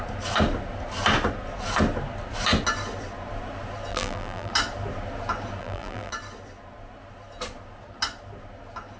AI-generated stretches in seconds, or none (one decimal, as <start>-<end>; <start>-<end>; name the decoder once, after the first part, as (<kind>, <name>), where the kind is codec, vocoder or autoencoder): 3.9-4.5 (vocoder, BigVGAN v2); 5.6-6.1